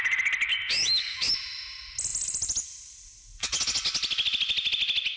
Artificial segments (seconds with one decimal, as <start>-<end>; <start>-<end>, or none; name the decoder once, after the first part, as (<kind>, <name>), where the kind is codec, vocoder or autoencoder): 0.8-1.3 (autoencoder, DAC-VAE)